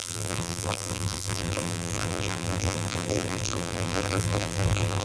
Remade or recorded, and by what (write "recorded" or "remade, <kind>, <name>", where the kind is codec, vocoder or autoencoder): remade, vocoder, BigVGAN v2